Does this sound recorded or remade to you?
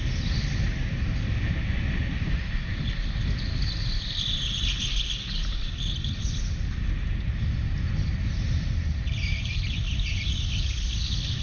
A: recorded